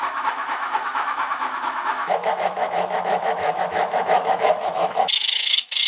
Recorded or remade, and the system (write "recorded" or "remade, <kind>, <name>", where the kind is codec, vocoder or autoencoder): remade, autoencoder, DAC-VAE